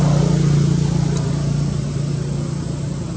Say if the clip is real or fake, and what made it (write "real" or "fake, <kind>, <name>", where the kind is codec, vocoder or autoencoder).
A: real